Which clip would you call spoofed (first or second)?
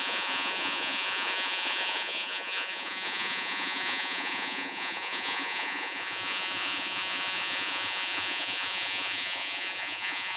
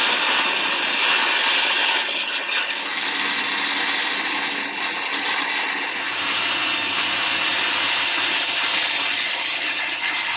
first